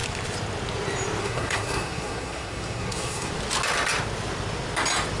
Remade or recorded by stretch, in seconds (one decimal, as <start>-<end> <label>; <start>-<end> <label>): 0.0-1.2 recorded; 1.2-3.3 remade; 3.3-5.2 recorded